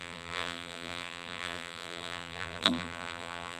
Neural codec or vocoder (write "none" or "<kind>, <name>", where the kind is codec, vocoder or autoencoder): vocoder, BigVGAN v2